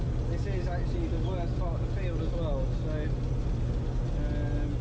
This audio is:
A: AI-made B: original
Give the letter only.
B